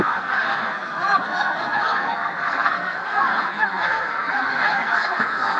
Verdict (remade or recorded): remade